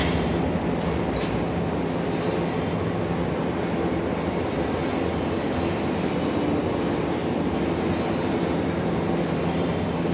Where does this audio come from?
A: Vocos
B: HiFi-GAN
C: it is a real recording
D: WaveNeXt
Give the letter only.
C